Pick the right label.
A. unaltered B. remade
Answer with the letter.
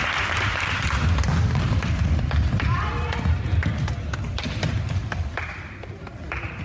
A